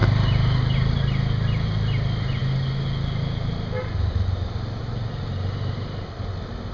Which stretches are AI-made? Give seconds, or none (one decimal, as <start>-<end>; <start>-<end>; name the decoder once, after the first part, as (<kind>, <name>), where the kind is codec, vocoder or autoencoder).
none